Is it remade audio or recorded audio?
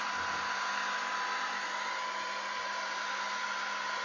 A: recorded